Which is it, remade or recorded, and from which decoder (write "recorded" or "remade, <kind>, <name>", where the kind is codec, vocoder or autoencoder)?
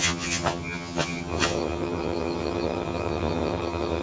remade, vocoder, HiFi-GAN